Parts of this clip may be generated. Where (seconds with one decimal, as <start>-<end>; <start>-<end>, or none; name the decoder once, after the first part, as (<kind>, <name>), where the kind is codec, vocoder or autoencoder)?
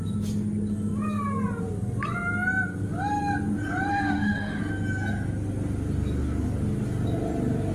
3.9-4.6 (autoencoder, DAC-VAE)